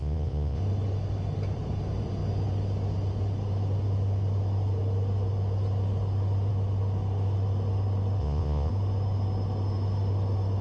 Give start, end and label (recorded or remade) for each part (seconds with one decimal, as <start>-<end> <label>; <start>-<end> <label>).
0.0-0.6 remade; 0.6-8.2 recorded; 8.2-8.7 remade; 8.7-10.6 recorded